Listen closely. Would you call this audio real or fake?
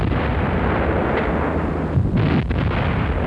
real